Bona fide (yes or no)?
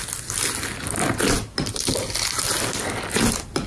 yes